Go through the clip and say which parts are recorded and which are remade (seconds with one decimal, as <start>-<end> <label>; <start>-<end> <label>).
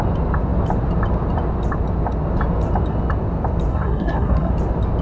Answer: 0.0-3.7 recorded; 3.7-4.5 remade; 4.5-5.0 recorded